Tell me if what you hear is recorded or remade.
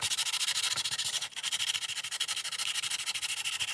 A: recorded